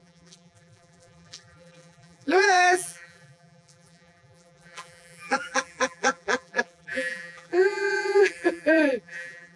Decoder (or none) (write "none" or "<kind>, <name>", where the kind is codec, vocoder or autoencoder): vocoder, BigVGAN v2